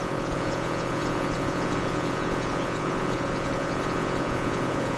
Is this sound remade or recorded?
remade